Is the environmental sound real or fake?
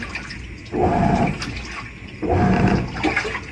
real